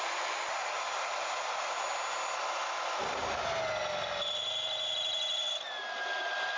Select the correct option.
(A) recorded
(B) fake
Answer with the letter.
A